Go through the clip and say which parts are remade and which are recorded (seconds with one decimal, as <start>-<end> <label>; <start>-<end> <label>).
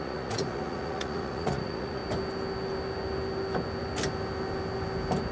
0.0-2.0 remade; 2.0-5.3 recorded